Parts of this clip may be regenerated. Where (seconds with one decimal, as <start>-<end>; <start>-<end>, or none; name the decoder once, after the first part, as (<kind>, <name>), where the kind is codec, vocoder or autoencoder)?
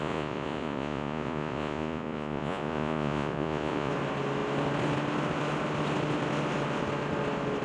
0.0-3.9 (vocoder, Vocos)